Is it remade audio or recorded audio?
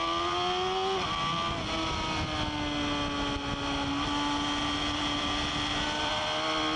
recorded